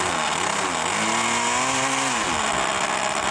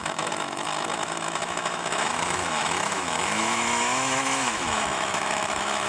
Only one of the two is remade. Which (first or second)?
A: second